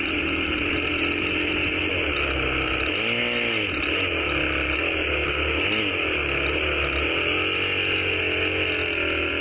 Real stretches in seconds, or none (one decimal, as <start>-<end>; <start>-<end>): 0.0-9.4